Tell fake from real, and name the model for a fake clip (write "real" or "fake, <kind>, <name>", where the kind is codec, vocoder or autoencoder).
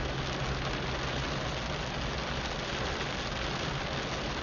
real